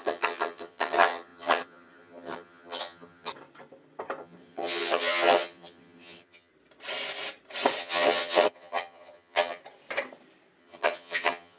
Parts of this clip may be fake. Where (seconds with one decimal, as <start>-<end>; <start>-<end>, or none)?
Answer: 0.0-3.3; 4.2-6.5; 7.8-9.6; 10.6-11.6